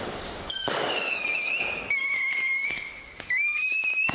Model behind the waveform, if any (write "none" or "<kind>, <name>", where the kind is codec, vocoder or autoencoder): codec, DAC